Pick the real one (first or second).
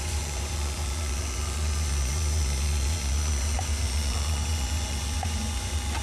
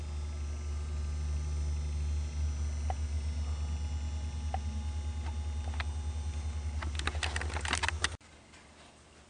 second